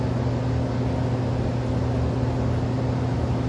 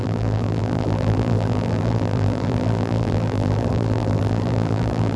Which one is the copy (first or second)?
second